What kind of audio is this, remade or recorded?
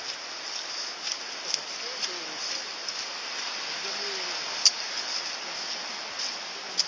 recorded